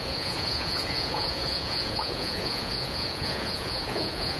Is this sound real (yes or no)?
no